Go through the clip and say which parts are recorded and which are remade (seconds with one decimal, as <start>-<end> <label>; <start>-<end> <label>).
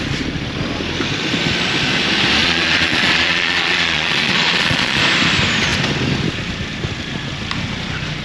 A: 0.0-2.4 recorded; 2.4-5.0 remade; 5.0-8.2 recorded